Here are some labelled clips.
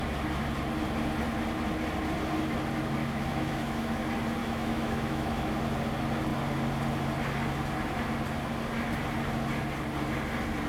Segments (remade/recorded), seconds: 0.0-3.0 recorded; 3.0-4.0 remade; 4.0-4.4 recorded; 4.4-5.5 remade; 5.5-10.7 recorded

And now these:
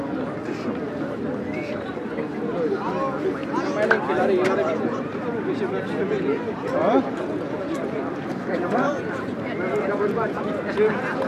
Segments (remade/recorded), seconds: 0.0-6.8 recorded; 6.8-10.4 remade; 10.4-11.3 recorded

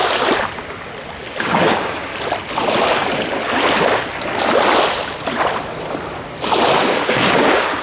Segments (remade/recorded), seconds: 0.0-1.4 recorded; 1.4-2.1 remade; 2.1-6.8 recorded; 6.8-7.8 remade

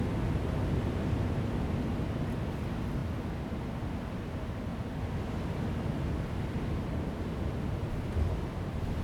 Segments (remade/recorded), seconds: 0.0-9.0 recorded

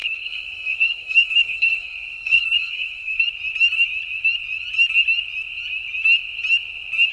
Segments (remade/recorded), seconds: 0.0-3.2 remade; 3.2-7.1 recorded

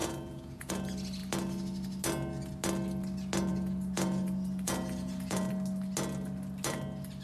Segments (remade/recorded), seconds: 0.0-0.7 remade; 0.7-3.5 recorded; 3.5-5.5 remade; 5.5-7.2 recorded

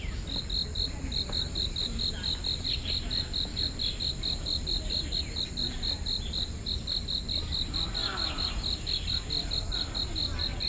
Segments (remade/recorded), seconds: 0.0-10.7 recorded

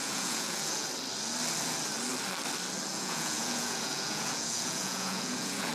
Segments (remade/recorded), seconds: 0.0-0.9 remade; 0.9-2.9 recorded; 2.9-5.7 remade